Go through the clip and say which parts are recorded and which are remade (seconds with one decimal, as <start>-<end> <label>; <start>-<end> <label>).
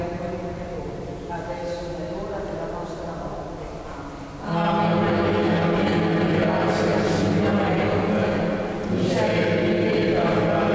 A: 0.0-10.7 recorded